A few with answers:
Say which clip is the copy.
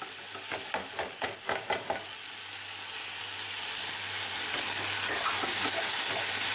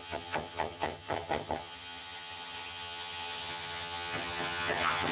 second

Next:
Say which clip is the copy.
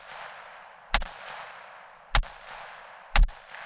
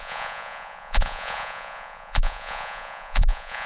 second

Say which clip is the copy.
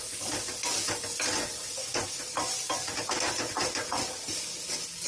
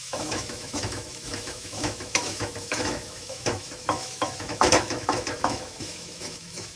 second